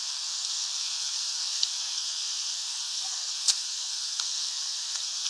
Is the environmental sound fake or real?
fake